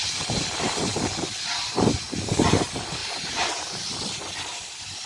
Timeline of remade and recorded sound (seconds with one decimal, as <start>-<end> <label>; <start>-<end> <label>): 0.0-3.0 recorded; 3.0-3.9 remade; 3.9-5.1 recorded